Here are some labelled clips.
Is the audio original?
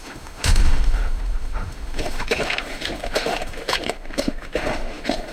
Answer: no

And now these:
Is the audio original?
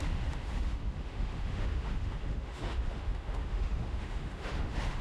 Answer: no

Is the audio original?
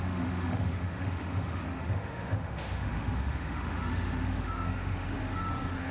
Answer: no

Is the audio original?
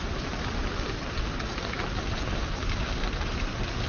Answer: yes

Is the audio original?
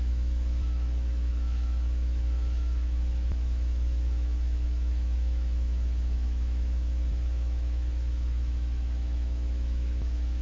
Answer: no